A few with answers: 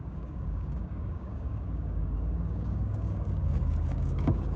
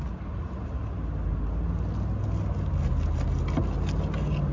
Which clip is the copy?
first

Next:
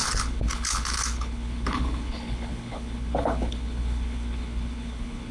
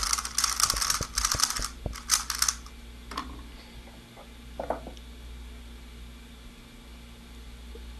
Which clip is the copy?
first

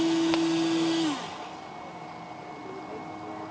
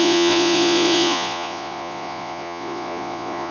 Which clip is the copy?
second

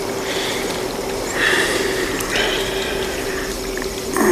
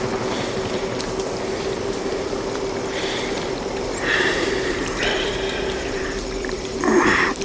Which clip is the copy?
second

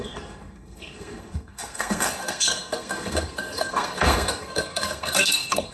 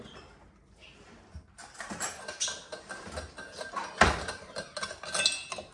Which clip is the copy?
first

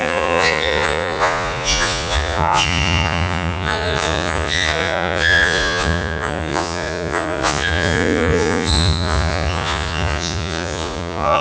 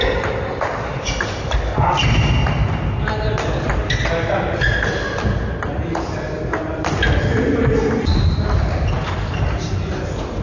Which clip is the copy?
first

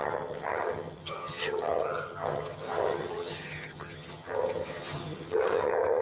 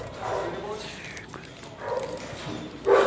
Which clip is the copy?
first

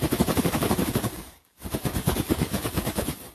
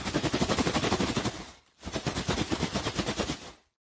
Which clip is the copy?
first